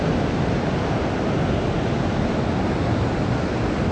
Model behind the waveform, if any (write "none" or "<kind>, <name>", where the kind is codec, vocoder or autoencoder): none